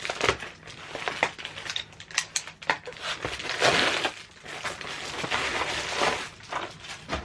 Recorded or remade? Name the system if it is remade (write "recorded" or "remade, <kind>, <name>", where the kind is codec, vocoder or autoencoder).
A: recorded